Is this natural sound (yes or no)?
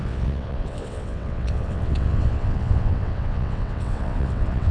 no